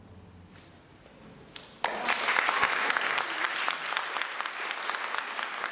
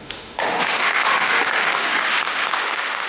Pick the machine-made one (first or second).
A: second